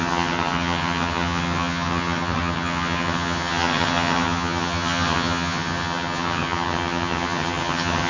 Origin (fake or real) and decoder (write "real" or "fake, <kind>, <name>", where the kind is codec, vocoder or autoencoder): fake, vocoder, HiFi-GAN